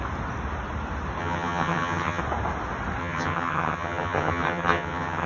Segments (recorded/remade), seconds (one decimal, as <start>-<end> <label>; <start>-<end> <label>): 0.0-1.2 recorded; 1.2-2.2 remade; 2.2-3.0 recorded; 3.0-5.3 remade